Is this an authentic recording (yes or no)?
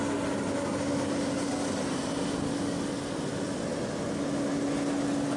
yes